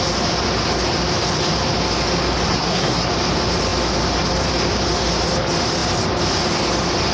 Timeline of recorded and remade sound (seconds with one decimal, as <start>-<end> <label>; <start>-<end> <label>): 0.0-2.5 recorded; 2.5-3.1 remade; 3.1-7.1 recorded